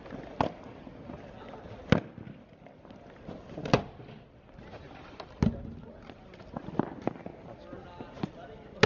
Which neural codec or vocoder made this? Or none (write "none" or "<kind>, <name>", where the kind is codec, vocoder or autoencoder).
none